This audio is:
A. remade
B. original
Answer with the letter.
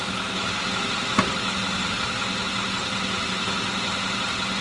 B